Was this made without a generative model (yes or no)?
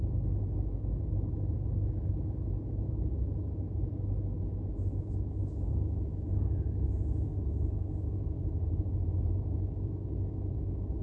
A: no